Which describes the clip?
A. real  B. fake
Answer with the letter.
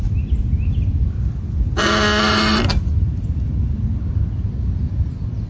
A